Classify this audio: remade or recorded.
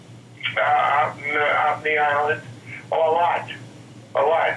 recorded